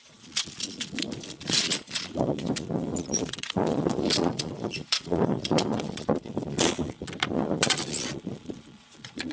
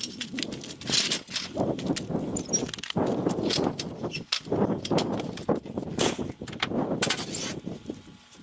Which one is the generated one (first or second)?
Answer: first